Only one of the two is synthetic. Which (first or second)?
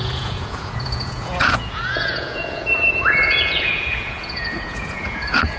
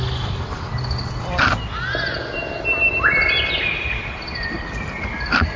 first